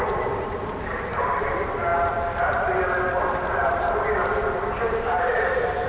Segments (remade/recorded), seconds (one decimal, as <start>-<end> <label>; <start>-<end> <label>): 0.0-1.9 remade; 1.9-4.8 recorded; 4.8-5.9 remade